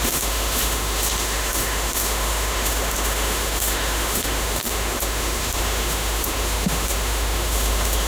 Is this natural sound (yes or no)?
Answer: no